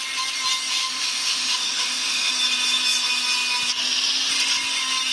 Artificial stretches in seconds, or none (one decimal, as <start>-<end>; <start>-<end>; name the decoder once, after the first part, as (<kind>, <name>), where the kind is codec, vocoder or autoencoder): 0.8-2.3 (autoencoder, DAC-VAE)